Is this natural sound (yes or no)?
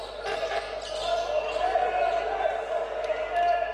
yes